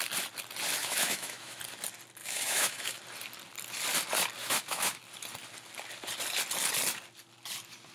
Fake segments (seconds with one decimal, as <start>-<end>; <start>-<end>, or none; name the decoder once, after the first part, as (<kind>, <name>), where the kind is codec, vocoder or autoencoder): 0.8-1.6 (autoencoder, DAC-VAE); 2.2-3.0; 4.4-5.0